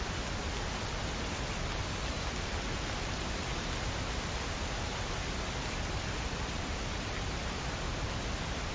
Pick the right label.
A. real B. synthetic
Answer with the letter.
A